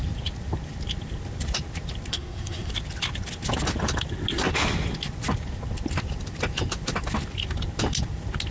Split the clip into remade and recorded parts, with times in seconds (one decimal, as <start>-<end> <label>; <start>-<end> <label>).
0.0-2.1 recorded; 2.1-2.7 remade; 2.7-8.5 recorded